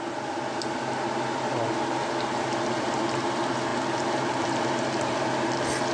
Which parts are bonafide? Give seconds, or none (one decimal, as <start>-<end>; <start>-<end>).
0.0-5.9

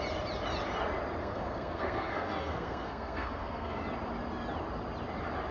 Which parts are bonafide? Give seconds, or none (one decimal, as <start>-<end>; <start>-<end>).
0.0-1.2; 3.8-5.5

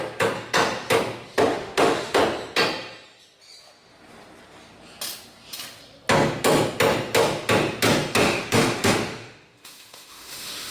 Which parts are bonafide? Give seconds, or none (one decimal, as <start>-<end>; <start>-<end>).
0.0-1.5; 2.2-8.2